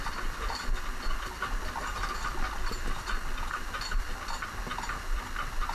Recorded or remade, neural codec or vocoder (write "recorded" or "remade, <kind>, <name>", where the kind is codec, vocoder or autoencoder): recorded